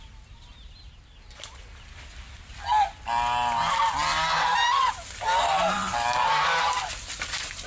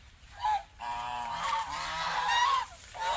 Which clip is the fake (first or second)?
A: second